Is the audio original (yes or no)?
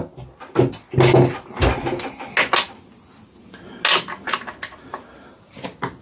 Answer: yes